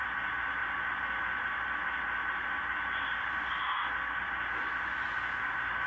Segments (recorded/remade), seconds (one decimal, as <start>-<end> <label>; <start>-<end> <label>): 0.0-5.9 recorded